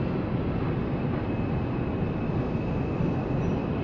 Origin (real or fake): real